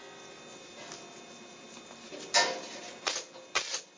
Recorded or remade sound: recorded